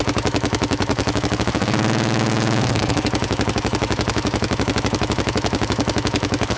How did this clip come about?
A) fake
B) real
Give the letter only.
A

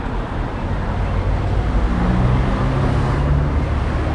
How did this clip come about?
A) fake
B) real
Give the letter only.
B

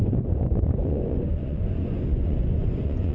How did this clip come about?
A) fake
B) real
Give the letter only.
A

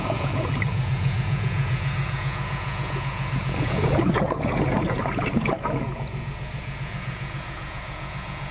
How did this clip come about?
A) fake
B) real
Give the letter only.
A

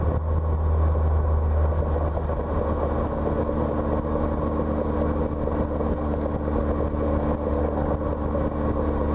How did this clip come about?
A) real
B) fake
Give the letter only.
A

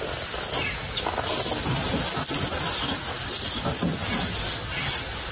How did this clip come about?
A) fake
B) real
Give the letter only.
B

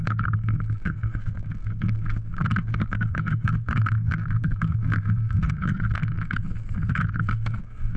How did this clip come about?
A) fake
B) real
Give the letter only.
A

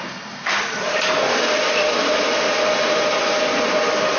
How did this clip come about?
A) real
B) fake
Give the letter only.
A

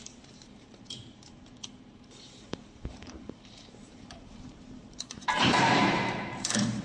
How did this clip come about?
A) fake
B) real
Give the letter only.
A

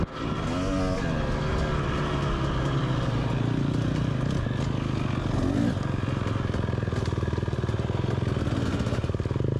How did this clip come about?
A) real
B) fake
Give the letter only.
A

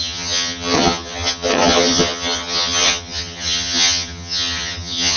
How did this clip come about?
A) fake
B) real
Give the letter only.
A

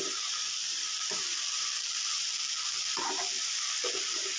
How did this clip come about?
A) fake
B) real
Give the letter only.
A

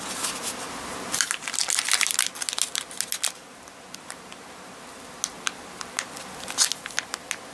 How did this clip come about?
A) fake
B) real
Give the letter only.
B